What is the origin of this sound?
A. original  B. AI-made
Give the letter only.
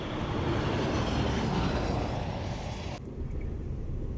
A